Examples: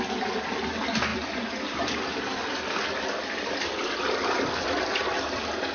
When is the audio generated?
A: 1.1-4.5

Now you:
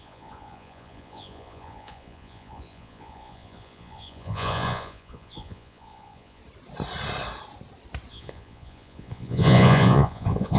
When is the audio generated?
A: 0.0-6.4; 8.1-10.6

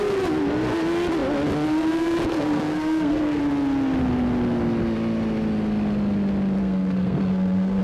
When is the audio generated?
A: 2.3-3.4; 6.6-7.8